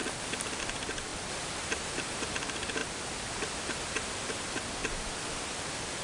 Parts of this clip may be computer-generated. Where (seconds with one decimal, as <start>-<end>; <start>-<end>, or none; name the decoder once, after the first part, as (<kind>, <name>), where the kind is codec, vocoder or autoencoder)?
1.1-2.0 (vocoder, BigVGAN v2); 4.8-5.4